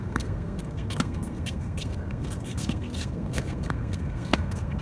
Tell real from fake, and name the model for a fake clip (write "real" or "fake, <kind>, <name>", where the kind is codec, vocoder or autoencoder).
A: fake, codec, SNAC